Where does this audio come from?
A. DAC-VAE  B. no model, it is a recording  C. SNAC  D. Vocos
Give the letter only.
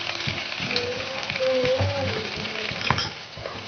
B